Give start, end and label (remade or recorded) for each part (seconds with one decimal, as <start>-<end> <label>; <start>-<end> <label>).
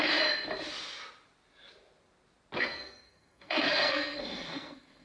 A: 0.0-2.6 recorded; 2.6-5.0 remade